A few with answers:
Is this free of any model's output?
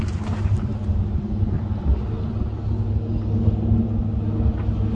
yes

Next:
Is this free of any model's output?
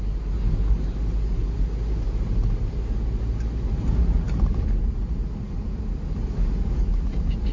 yes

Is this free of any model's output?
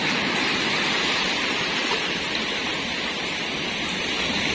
yes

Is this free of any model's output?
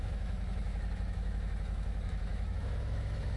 no